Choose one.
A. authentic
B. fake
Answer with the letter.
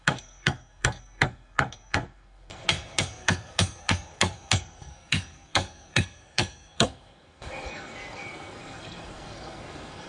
B